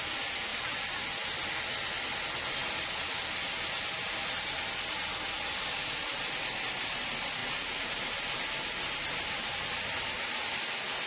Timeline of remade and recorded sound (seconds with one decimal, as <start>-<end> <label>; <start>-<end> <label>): 0.0-0.5 recorded; 0.5-1.0 remade; 1.0-11.1 recorded